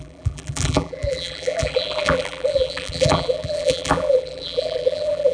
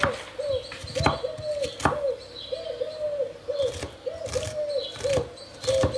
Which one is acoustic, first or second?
second